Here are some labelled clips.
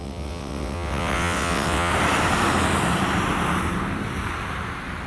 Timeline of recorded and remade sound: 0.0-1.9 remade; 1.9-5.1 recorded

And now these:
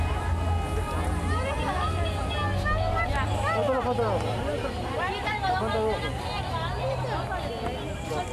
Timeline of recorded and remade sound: 0.0-8.3 recorded

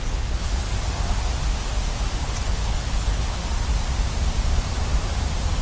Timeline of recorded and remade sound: 0.0-0.7 remade; 0.7-2.2 recorded; 2.2-3.4 remade; 3.4-5.6 recorded